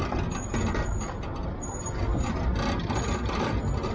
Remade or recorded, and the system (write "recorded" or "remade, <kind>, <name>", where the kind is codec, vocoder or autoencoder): recorded